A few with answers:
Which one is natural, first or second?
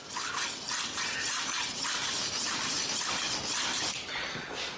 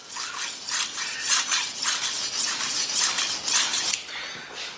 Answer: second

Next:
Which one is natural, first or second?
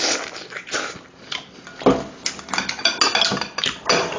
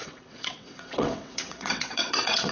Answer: first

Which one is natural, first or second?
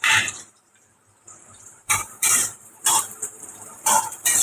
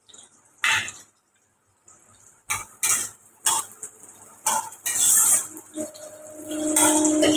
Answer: second